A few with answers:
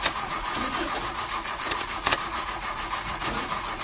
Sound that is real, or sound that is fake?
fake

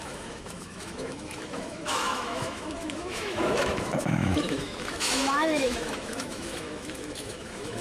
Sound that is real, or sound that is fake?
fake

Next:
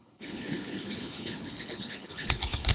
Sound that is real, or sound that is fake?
fake